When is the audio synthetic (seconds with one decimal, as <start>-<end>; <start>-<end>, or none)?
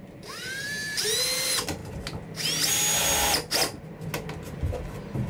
0.0-1.8; 4.4-5.3